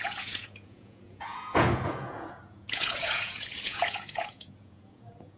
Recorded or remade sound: remade